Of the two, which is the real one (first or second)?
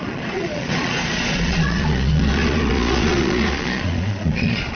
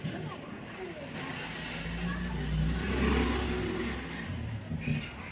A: second